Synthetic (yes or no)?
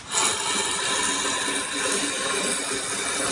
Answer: no